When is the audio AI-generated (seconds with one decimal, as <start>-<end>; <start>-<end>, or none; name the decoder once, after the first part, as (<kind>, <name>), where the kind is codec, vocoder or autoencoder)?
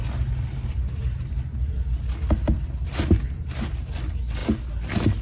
none